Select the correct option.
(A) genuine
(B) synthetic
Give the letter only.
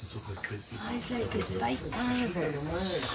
A